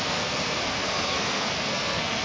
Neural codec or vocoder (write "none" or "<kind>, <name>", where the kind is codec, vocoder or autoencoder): codec, SNAC